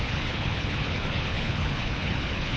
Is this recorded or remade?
remade